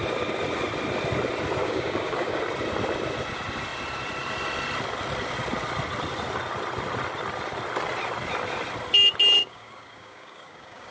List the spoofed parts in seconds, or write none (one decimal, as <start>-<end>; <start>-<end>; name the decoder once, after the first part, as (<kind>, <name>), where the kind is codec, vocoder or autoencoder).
1.6-2.4 (codec, DAC); 9.4-10.9